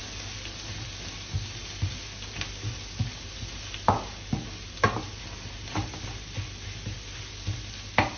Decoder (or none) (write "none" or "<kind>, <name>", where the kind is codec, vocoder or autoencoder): none